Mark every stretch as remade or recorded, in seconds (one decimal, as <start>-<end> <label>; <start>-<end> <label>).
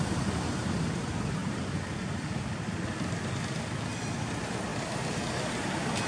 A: 0.0-6.1 recorded